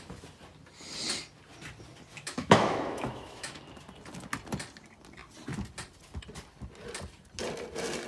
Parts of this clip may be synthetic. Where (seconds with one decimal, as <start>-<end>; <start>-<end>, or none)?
2.1-3.6